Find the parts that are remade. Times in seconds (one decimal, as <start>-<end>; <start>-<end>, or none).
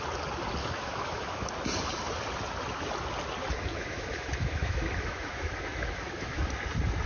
0.6-1.5; 3.7-6.5